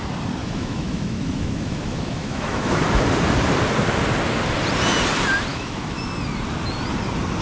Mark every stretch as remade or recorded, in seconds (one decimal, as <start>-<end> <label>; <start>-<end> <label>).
0.0-0.4 recorded; 0.4-2.8 remade; 2.8-5.5 recorded; 5.5-6.0 remade; 6.0-7.4 recorded